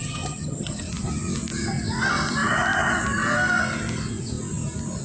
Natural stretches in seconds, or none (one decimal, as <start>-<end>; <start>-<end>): 0.8-5.0